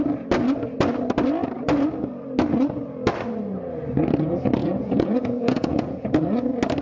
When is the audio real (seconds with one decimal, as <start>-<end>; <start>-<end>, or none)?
0.0-4.6; 6.2-6.8